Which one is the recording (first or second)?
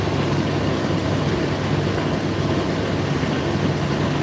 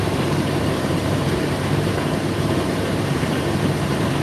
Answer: first